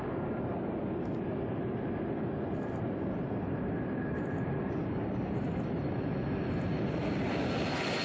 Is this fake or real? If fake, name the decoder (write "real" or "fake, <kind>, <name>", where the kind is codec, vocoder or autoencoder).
real